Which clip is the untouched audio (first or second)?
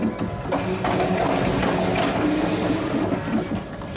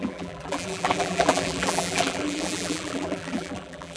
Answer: first